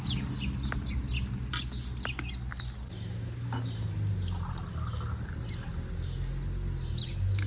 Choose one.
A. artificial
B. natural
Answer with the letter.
B